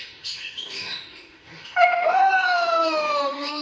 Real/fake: fake